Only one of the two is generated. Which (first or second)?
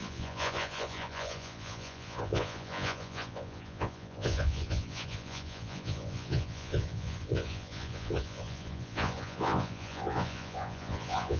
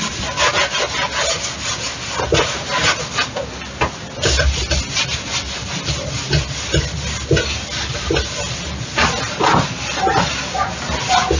first